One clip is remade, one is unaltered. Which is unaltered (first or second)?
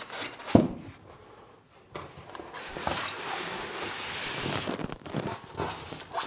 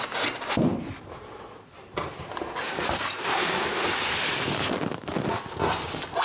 second